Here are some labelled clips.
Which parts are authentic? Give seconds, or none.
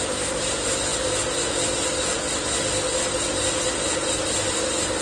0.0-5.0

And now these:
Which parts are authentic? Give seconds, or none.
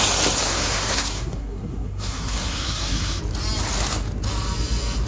0.0-0.5; 3.2-5.1